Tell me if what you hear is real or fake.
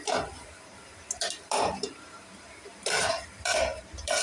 fake